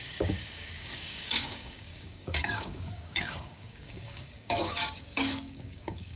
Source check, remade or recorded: remade